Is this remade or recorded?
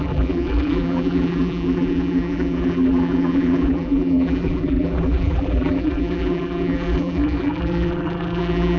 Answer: remade